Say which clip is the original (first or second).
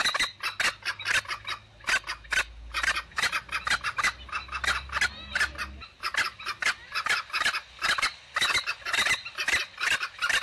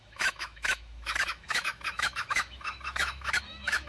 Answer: first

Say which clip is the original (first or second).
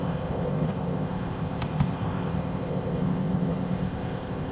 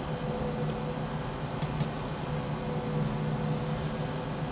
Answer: second